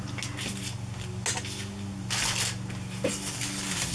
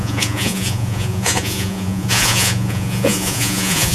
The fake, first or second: second